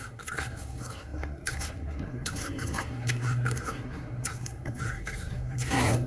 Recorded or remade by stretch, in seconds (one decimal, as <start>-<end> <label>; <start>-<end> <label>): 0.0-6.1 remade